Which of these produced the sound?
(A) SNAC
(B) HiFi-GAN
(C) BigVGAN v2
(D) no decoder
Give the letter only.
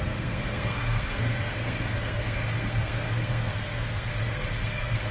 A